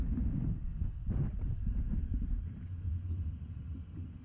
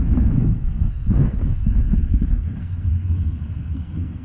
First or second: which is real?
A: first